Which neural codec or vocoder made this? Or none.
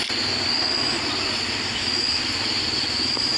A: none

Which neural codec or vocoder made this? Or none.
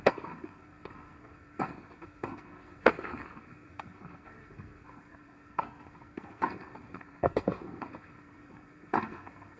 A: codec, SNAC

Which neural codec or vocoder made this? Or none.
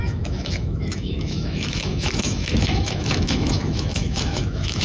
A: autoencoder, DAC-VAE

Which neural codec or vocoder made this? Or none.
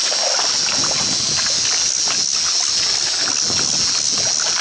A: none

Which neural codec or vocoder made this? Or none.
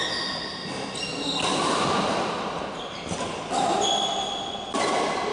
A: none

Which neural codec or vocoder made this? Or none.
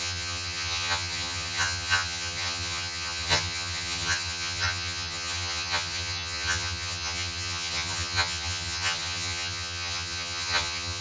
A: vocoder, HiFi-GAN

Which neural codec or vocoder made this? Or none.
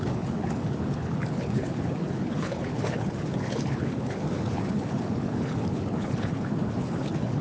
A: codec, HILCodec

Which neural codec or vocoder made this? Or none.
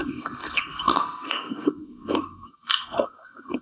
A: codec, SNAC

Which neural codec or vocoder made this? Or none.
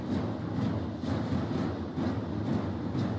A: none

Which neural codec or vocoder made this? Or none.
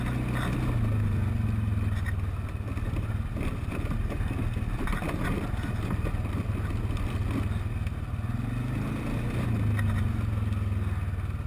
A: none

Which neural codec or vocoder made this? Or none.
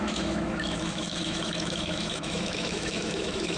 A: autoencoder, DAC-VAE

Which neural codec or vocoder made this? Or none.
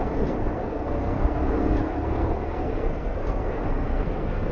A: codec, SNAC